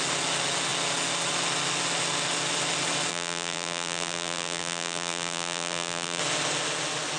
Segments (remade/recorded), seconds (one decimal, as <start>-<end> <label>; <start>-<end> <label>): 0.0-3.1 recorded; 3.1-6.2 remade; 6.2-7.2 recorded